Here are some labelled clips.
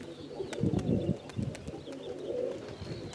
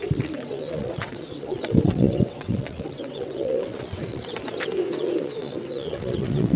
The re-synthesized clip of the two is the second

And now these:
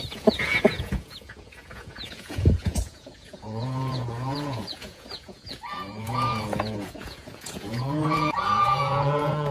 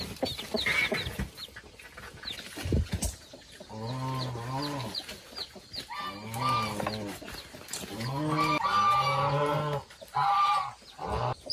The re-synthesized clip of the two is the first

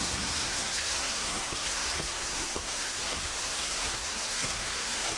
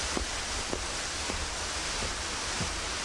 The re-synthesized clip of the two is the first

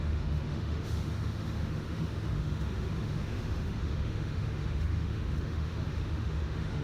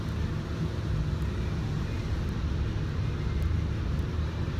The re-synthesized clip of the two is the first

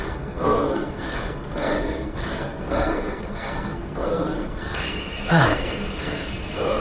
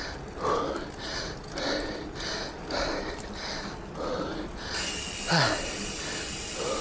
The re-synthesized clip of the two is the first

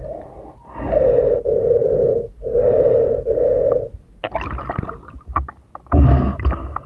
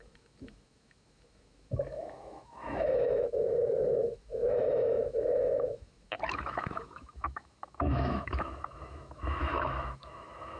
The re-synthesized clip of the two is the second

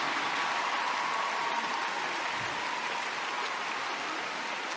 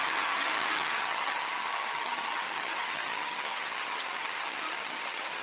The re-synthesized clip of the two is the second